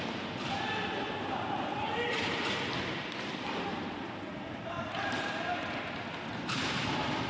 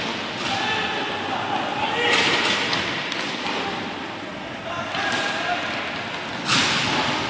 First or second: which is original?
second